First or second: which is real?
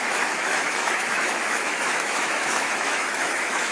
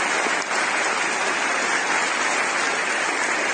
second